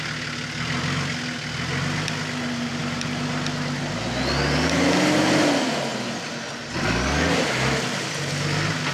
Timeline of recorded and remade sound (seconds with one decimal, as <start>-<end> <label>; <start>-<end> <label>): 0.0-8.9 recorded